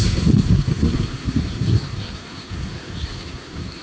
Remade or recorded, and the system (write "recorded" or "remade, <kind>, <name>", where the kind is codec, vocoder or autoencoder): remade, codec, SNAC